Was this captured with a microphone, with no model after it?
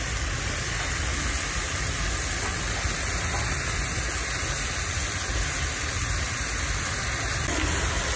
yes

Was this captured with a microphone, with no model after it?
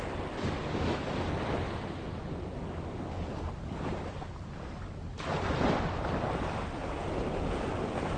yes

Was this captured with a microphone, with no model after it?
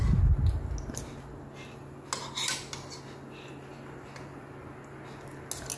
yes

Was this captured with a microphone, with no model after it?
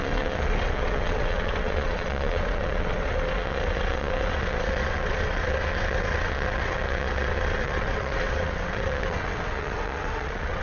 no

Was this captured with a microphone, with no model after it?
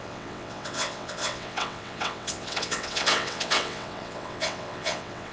no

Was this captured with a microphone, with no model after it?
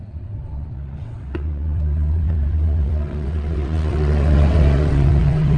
no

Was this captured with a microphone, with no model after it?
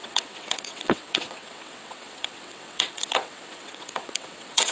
no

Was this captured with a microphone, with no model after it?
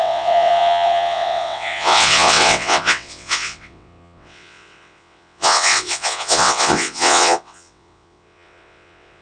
no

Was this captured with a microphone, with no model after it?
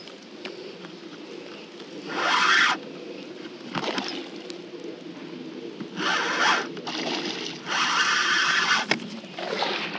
yes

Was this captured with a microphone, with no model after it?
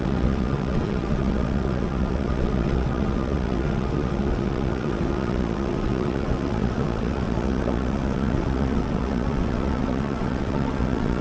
no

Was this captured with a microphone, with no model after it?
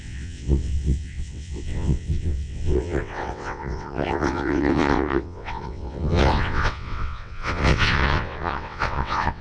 no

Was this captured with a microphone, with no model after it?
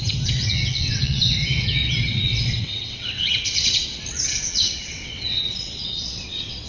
no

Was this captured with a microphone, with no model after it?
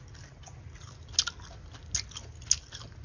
yes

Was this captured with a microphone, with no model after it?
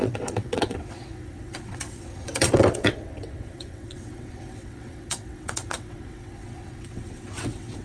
no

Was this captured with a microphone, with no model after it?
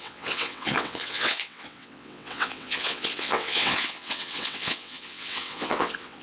no